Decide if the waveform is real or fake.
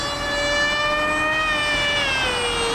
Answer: real